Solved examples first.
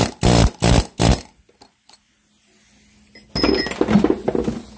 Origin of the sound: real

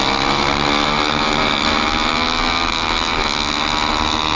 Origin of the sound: real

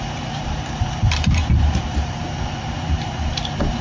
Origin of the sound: fake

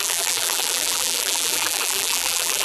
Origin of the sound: fake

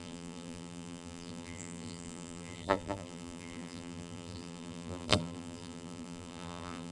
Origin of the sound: fake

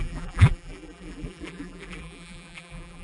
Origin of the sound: fake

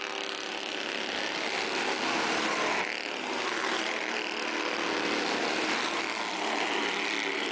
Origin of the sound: real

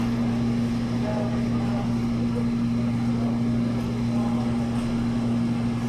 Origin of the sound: real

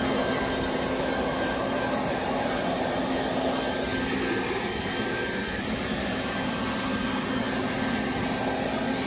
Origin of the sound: real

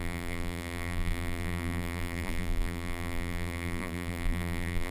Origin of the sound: fake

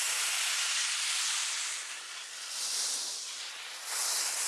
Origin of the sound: real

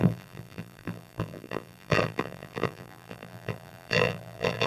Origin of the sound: fake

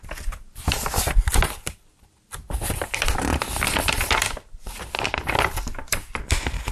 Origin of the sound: fake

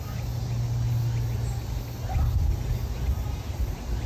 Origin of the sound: real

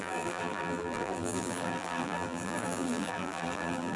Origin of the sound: fake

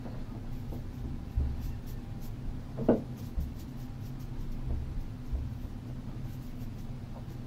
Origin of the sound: real